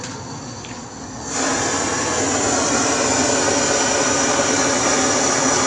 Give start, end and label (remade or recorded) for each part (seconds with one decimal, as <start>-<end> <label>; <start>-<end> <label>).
0.0-5.7 recorded